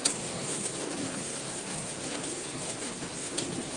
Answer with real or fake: fake